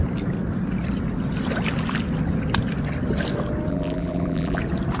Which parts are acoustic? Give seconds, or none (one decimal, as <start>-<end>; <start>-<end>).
0.0-3.7; 4.6-5.0